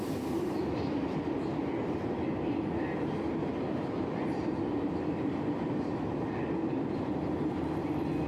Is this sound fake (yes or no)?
no